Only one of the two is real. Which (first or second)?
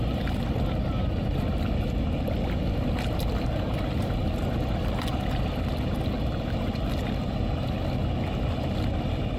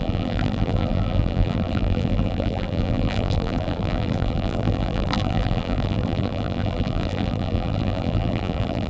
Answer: first